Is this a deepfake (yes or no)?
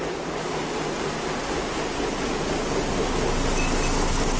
no